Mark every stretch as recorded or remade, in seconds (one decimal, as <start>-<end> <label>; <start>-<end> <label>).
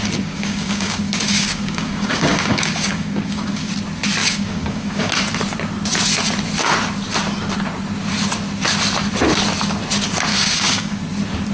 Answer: 0.0-3.7 remade; 3.7-4.2 recorded; 4.2-5.1 remade; 5.1-10.3 recorded; 10.3-11.0 remade; 11.0-11.5 recorded